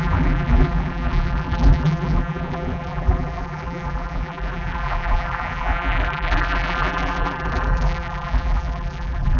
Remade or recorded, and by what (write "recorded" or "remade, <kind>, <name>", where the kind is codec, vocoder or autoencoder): remade, vocoder, BigVGAN v2